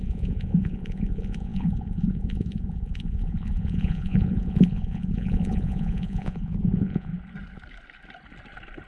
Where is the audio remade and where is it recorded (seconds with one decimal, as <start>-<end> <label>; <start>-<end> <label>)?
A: 0.0-7.1 remade; 7.1-8.9 recorded